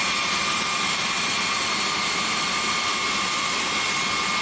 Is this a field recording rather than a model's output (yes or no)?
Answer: yes